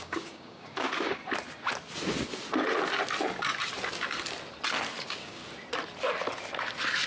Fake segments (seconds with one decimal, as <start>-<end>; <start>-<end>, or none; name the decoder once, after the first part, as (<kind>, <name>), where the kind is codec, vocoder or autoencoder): 0.0-1.2 (codec, DAC); 5.0-5.4